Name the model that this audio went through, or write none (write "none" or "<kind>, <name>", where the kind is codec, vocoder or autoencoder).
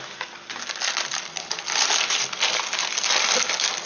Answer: none